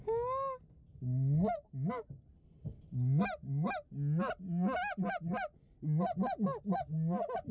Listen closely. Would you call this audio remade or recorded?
recorded